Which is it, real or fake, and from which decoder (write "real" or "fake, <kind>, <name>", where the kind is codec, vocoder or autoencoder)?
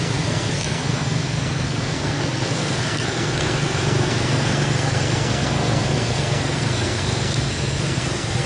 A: fake, codec, SNAC